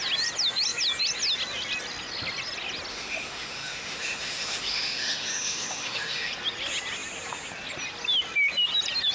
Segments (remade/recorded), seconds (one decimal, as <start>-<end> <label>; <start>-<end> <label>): 0.0-2.9 recorded; 2.9-6.3 remade; 6.3-9.1 recorded